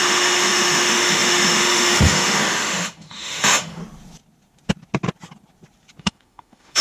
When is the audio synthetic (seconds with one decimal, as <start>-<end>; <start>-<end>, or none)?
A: 0.0-3.8; 6.0-6.8